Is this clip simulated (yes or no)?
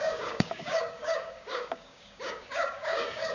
yes